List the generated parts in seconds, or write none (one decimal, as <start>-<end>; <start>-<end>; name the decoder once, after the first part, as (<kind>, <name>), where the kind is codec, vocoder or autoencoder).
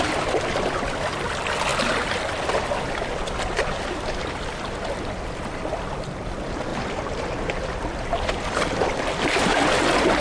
none